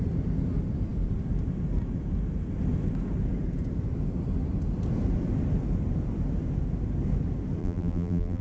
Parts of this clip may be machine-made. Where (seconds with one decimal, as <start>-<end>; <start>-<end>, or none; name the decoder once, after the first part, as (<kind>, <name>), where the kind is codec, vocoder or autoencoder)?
7.6-8.4 (vocoder, BigVGAN v2)